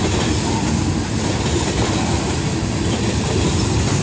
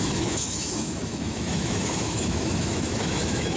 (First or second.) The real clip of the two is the first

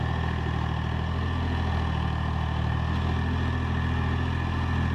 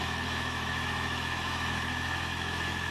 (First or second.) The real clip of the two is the first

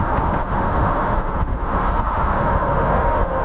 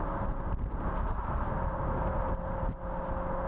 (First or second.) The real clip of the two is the second